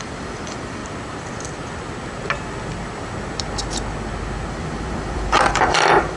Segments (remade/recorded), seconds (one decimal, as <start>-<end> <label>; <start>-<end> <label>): 0.0-0.8 remade; 0.8-4.5 recorded; 4.5-6.2 remade